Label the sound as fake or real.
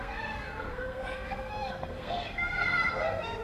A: fake